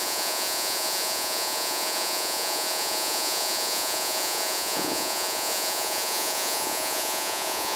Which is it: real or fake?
fake